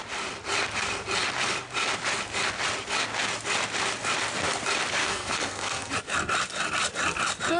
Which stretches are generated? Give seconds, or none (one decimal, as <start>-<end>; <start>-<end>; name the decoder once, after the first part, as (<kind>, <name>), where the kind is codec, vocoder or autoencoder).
5.0-5.9 (codec, SNAC)